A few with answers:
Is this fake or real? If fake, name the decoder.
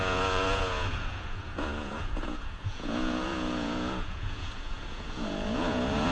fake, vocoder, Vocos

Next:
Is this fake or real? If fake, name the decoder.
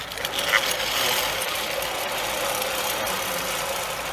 real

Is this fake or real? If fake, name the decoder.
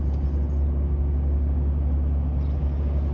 real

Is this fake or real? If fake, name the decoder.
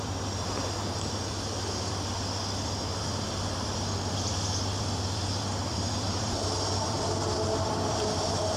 fake, vocoder, BigVGAN v2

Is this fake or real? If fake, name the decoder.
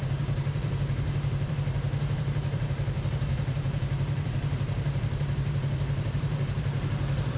fake, vocoder, BigVGAN v2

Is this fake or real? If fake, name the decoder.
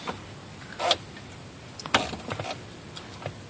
real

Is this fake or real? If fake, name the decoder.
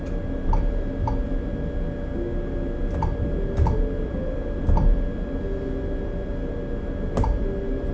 real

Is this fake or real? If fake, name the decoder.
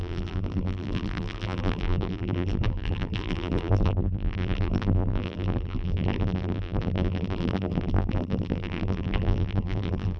fake, vocoder, BigVGAN v2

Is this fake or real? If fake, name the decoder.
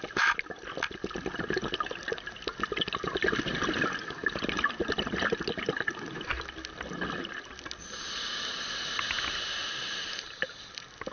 real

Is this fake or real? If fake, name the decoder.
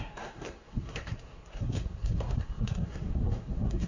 fake, codec, SNAC